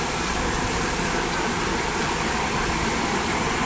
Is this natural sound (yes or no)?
yes